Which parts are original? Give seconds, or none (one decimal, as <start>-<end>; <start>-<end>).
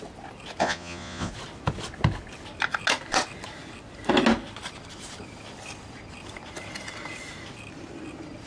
0.0-0.6; 1.3-8.5